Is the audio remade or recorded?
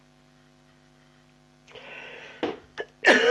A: recorded